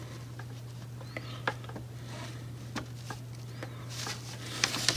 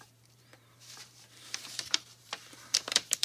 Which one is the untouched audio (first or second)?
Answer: first